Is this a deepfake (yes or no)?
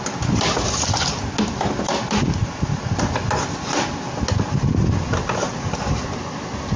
no